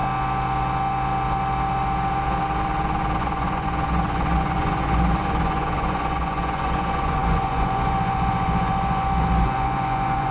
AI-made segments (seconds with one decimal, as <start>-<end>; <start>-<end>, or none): 3.2-10.3